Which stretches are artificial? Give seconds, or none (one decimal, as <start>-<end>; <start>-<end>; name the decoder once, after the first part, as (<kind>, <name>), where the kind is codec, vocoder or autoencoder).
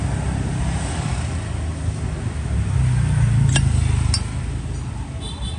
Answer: none